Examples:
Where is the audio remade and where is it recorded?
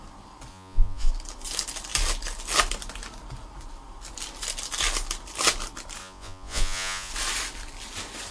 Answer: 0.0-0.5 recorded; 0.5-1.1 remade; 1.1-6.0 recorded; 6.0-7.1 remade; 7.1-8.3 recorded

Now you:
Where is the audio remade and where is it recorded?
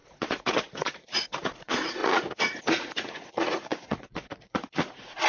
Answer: 0.0-5.3 remade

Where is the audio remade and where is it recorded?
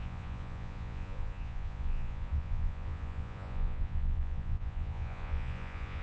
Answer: 0.0-6.0 remade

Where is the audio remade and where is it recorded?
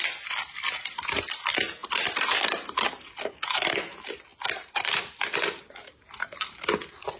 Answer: 0.0-7.2 recorded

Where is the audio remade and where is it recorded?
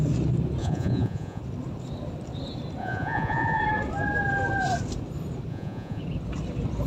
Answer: 0.0-0.6 recorded; 0.6-1.4 remade; 1.4-2.8 recorded; 2.8-3.6 remade; 3.6-5.5 recorded; 5.5-6.0 remade; 6.0-6.9 recorded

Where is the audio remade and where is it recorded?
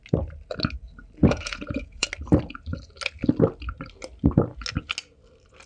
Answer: 0.0-1.2 recorded; 1.2-2.1 remade; 2.1-5.7 recorded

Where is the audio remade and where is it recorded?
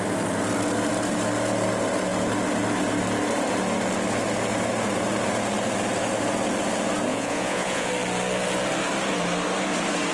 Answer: 0.0-7.1 recorded; 7.1-7.9 remade; 7.9-10.1 recorded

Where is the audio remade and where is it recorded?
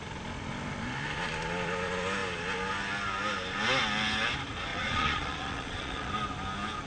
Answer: 0.0-4.7 recorded; 4.7-6.1 remade; 6.1-6.9 recorded